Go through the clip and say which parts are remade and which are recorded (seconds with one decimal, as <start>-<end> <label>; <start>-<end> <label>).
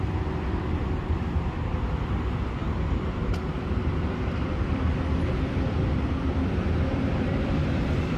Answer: 0.0-2.6 remade; 2.6-3.9 recorded; 3.9-8.2 remade